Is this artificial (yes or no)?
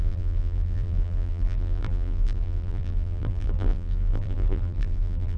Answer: yes